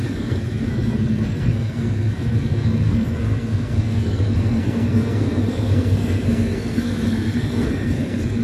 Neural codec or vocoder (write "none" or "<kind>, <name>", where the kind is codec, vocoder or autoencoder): codec, SNAC